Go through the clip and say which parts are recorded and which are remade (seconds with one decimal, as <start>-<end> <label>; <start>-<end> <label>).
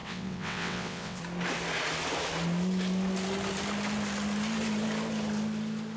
0.0-1.2 remade; 1.2-6.0 recorded